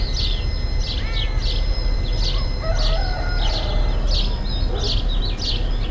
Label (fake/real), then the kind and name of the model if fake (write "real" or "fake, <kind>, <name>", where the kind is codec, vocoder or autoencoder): real